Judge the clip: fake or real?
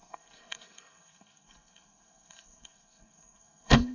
fake